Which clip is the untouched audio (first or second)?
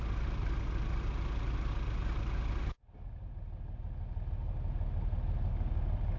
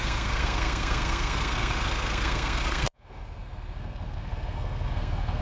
first